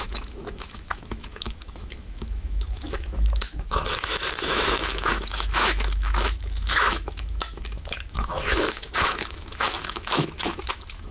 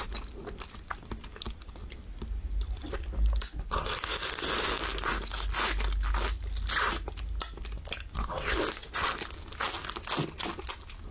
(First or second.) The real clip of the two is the second